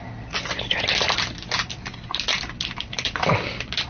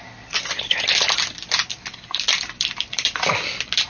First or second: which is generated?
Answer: second